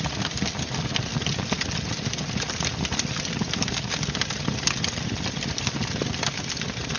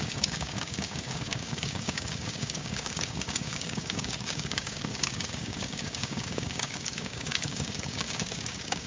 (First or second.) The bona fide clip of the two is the first